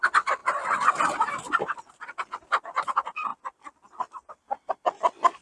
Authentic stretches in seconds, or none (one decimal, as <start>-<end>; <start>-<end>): 0.0-5.4